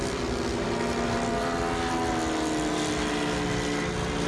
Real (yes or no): yes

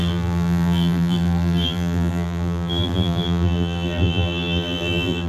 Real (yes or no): no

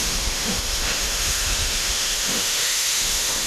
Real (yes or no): no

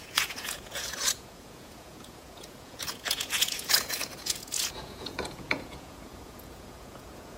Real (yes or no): no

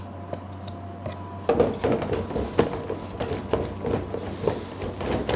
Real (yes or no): yes